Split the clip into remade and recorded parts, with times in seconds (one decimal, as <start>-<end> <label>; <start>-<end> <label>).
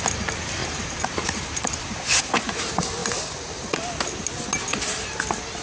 0.0-0.6 recorded; 0.6-1.7 remade; 1.7-5.6 recorded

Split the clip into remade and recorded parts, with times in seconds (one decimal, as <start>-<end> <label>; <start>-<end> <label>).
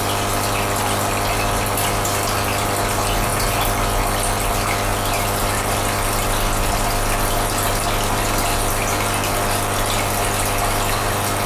0.0-11.5 recorded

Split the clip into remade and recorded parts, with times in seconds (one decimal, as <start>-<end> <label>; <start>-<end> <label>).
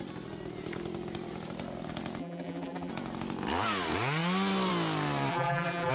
0.0-2.2 recorded; 2.2-2.9 remade; 2.9-5.3 recorded; 5.3-5.9 remade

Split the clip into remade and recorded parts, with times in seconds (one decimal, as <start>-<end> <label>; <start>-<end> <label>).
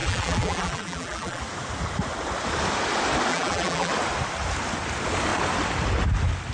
0.0-1.4 remade; 1.4-3.3 recorded; 3.3-3.9 remade; 3.9-6.5 recorded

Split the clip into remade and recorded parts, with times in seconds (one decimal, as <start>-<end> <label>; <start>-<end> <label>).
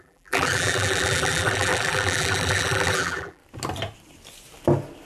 0.0-3.4 remade; 3.4-5.1 recorded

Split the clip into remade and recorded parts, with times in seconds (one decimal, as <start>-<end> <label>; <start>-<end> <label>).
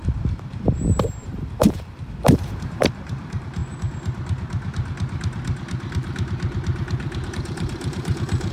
0.0-3.6 remade; 3.6-7.3 recorded; 7.3-8.5 remade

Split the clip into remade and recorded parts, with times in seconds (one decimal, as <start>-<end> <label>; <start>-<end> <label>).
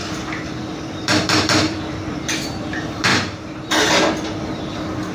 0.0-2.7 remade; 2.7-3.1 recorded; 3.1-3.7 remade; 3.7-5.1 recorded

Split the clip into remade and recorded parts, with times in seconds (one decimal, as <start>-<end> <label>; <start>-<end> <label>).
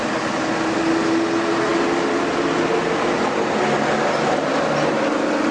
0.0-5.5 recorded